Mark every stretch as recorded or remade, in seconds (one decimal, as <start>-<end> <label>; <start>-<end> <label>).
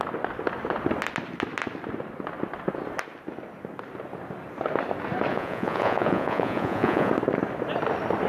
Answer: 0.0-5.3 recorded; 5.3-7.1 remade; 7.1-8.3 recorded